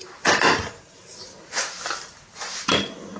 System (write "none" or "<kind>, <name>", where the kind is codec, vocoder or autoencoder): none